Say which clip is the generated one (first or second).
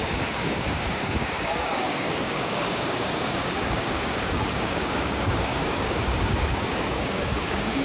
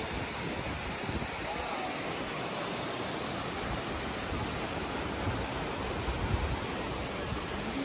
first